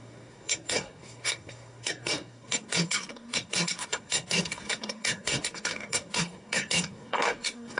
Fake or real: fake